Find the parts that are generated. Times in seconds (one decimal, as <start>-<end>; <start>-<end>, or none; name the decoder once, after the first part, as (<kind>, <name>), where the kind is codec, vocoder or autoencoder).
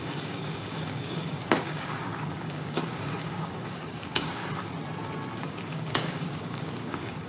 0.0-4.4 (codec, DAC); 5.4-7.3